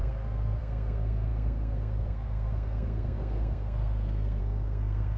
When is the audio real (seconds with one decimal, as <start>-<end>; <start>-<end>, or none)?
none